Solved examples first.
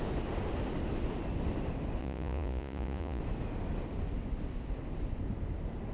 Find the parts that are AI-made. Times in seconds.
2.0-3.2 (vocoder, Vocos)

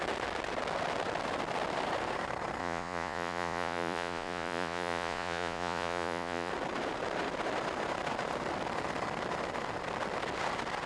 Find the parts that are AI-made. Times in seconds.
2.6-6.5 (vocoder, Vocos)

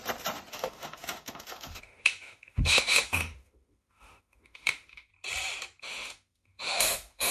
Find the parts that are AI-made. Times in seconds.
0.5-5.1 (autoencoder, DAC-VAE); 5.8-7.3

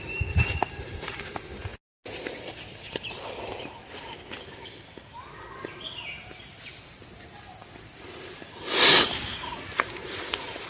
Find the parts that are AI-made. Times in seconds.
none